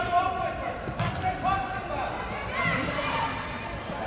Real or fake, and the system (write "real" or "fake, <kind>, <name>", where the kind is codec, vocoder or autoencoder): real